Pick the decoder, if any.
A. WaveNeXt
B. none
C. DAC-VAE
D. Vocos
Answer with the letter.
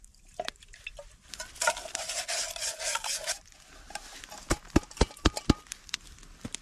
B